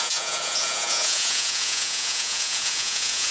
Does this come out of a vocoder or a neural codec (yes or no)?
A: yes